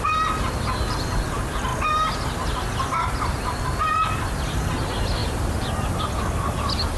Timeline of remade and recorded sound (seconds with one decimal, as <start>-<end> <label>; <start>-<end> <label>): 0.0-3.8 recorded; 3.8-4.7 remade; 4.7-5.2 recorded; 5.2-6.0 remade; 6.0-7.0 recorded